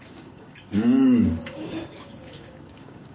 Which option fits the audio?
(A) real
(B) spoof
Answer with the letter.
B